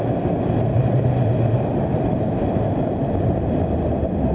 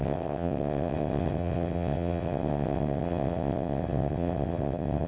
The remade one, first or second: second